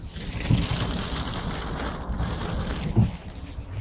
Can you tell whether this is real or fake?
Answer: real